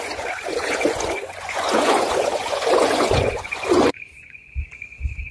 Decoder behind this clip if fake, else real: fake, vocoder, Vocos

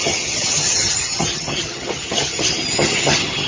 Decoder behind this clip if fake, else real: fake, vocoder, HiFi-GAN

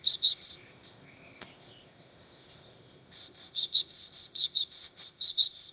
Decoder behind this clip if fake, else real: fake, codec, ZipCodec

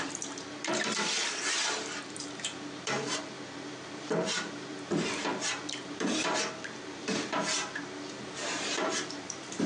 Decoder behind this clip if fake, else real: fake, vocoder, BigVGAN v2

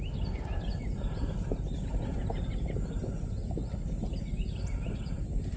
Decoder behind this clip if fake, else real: real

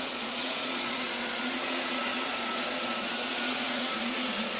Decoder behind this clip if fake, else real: fake, vocoder, Vocos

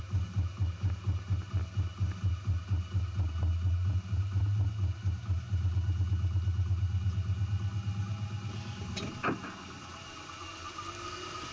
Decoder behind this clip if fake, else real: real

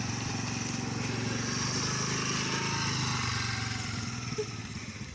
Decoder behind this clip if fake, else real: real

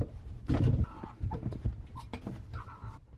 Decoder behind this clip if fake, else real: fake, vocoder, BigVGAN v2